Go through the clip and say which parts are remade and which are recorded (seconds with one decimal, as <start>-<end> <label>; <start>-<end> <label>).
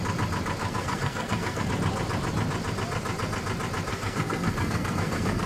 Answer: 0.0-0.6 recorded; 0.6-1.7 remade; 1.7-3.9 recorded; 3.9-5.5 remade